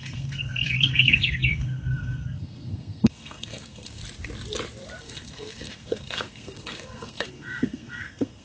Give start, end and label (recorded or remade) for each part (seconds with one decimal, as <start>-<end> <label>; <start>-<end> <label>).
0.0-4.0 remade; 4.0-5.0 recorded; 5.0-8.4 remade